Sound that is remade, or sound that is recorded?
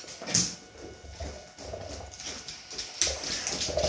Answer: recorded